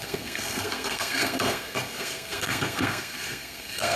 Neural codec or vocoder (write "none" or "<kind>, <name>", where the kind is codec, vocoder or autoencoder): codec, SNAC